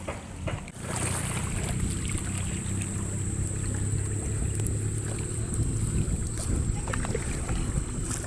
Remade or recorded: recorded